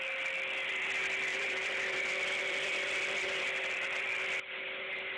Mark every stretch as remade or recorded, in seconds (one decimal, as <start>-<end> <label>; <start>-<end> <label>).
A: 0.0-1.3 recorded; 1.3-4.2 remade; 4.2-5.2 recorded